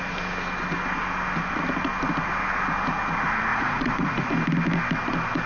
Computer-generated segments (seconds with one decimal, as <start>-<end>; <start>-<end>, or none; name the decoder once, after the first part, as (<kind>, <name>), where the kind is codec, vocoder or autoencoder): 3.5-4.3 (vocoder, Vocos)